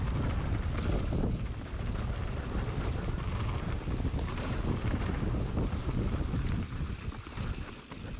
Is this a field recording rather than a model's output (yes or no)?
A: yes